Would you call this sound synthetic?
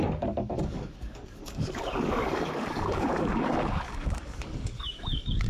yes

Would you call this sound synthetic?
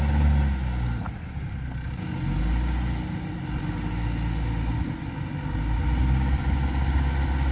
no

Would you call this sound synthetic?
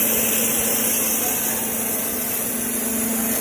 no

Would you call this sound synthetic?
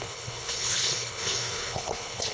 yes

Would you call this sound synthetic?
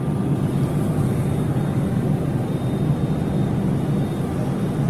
no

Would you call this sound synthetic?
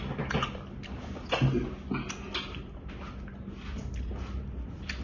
no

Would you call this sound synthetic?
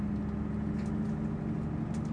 no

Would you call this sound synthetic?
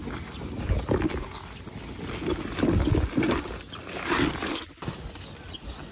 no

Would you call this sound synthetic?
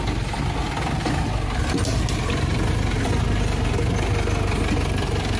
no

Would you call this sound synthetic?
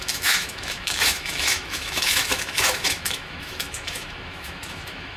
yes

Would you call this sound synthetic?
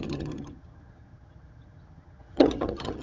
yes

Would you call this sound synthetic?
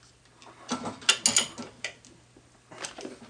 no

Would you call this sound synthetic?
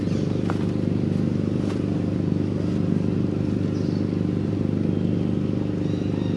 no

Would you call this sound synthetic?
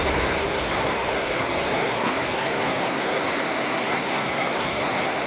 yes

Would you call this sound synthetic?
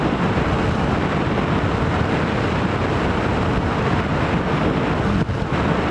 no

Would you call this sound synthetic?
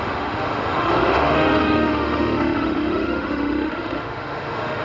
yes